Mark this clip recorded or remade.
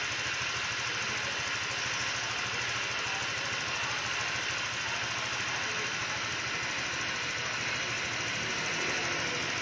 recorded